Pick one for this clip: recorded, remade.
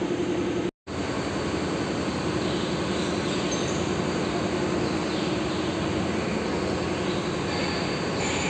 recorded